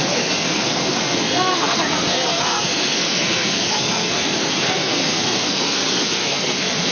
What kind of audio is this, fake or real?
fake